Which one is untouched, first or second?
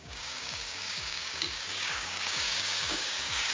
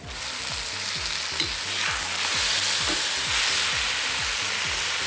second